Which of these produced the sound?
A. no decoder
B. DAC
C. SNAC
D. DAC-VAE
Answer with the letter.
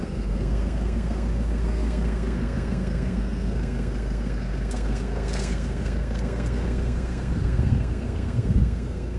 C